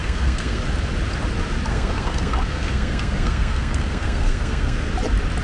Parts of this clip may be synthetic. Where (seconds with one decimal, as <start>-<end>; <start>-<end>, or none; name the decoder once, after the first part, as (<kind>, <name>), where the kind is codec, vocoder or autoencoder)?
0.0-0.6 (codec, SNAC); 1.7-4.9